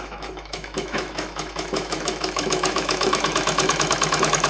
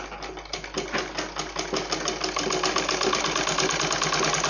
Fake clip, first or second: first